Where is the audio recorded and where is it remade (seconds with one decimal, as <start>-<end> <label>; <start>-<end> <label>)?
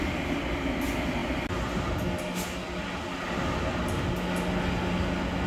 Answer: 0.0-5.5 recorded